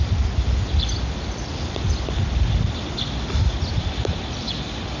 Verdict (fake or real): real